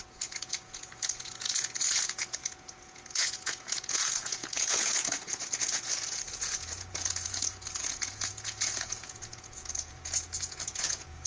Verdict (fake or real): fake